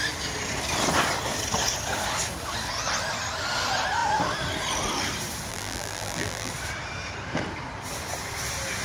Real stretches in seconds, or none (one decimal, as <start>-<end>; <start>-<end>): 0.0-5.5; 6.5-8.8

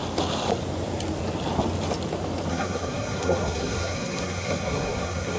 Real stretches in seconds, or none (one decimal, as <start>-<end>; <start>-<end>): 0.0-2.5

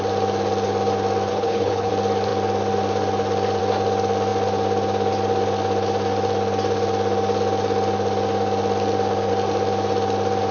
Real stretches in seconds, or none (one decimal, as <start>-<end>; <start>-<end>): 0.0-1.3; 1.9-10.5

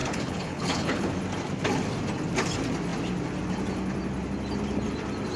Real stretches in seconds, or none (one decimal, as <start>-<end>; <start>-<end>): 1.1-5.4

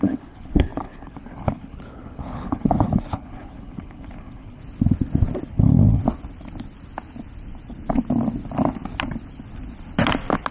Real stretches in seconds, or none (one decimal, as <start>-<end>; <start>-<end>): 4.6-5.5; 6.0-10.5